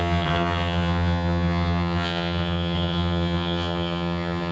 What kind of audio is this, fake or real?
fake